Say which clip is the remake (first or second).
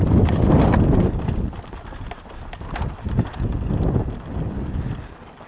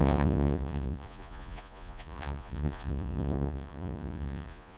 second